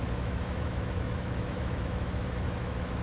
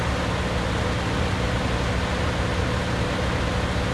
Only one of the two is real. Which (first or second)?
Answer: second